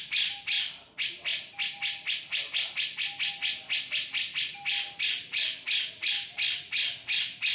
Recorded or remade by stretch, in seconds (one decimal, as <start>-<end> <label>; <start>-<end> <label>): 0.0-7.5 recorded

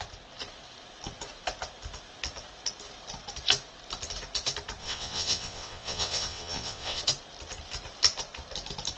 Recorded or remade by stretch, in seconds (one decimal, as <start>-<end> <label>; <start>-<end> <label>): 0.0-4.8 recorded; 4.8-7.0 remade; 7.0-9.0 recorded

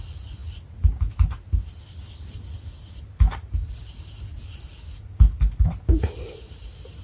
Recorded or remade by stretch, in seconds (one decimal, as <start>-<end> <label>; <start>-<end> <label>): 0.0-7.0 recorded